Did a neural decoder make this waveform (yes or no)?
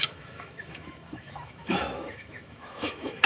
yes